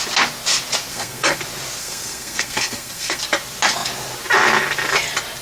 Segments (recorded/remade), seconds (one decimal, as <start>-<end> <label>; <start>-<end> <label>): 0.0-0.9 recorded; 0.9-1.4 remade; 1.4-1.8 recorded; 1.8-3.2 remade; 3.2-5.4 recorded